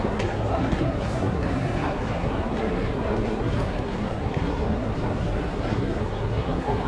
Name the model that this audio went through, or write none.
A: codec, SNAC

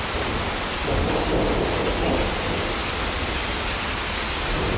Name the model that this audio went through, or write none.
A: none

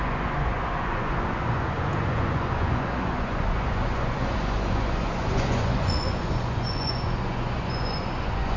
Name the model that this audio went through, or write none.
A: vocoder, Vocos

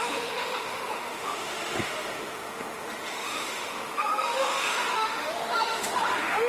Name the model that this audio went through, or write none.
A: autoencoder, DAC-VAE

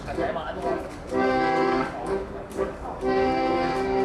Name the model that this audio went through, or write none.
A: codec, DAC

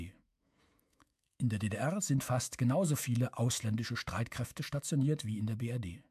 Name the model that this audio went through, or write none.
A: autoencoder, DAC-VAE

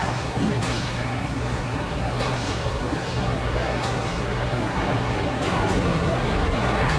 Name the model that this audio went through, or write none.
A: codec, SNAC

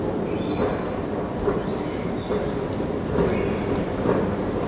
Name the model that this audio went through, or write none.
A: none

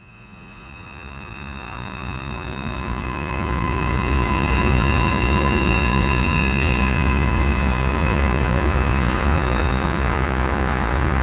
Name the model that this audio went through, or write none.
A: vocoder, Vocos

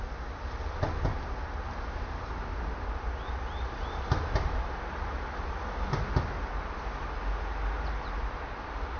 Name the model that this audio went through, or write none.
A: none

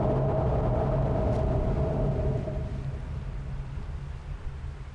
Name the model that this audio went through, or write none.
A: none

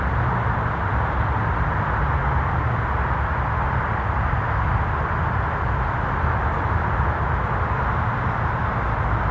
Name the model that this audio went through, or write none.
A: none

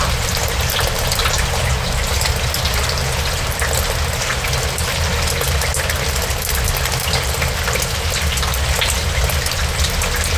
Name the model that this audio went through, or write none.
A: none